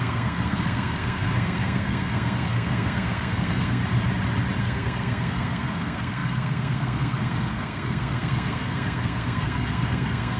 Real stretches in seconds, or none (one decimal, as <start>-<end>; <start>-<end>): 3.8-4.6